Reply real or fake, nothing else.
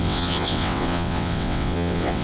fake